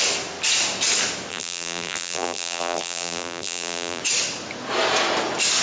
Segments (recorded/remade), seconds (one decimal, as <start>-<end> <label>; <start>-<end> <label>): 0.0-1.3 recorded; 1.3-4.0 remade; 4.0-5.6 recorded